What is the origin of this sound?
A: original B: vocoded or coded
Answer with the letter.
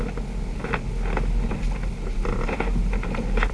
A